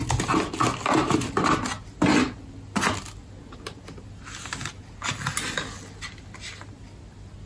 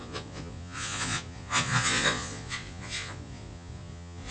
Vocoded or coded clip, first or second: second